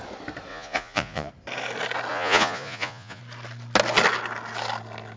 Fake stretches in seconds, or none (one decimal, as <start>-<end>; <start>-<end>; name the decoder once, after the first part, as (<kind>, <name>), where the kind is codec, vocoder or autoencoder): 0.5-1.3 (vocoder, Vocos); 2.1-3.2